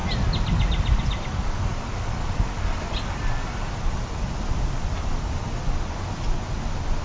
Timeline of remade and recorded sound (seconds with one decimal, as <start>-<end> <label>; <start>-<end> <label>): 0.0-1.7 recorded; 1.7-5.6 remade; 5.6-7.0 recorded